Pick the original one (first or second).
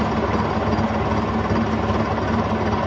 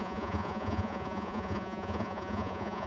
first